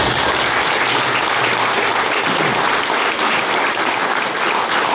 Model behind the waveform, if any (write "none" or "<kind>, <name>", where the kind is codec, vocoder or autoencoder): none